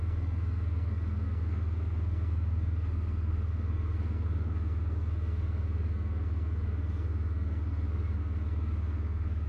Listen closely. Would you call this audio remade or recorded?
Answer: remade